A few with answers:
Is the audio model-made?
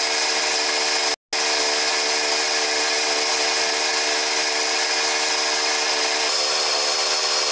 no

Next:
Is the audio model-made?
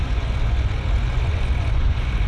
yes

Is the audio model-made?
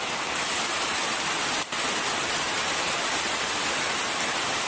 no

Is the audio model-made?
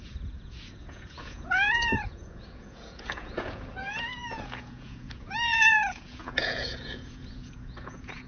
yes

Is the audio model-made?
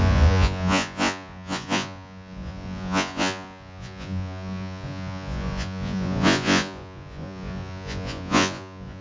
yes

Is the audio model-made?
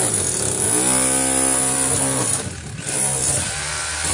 no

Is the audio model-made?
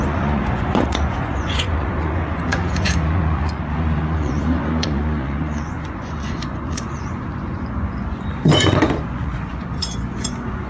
yes